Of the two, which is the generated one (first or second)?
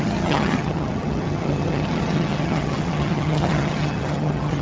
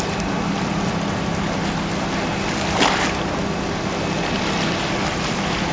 first